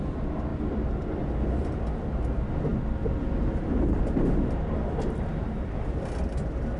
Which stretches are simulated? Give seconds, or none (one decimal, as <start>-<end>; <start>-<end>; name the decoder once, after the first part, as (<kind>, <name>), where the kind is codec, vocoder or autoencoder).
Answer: none